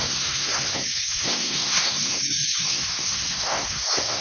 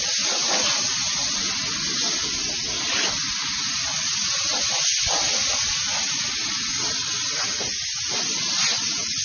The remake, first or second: first